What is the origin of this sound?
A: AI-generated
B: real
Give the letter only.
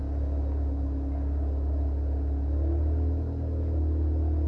B